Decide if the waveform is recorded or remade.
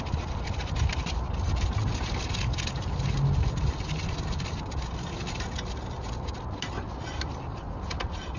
recorded